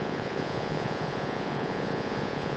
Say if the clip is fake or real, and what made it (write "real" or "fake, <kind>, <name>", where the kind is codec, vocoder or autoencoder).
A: fake, vocoder, Vocos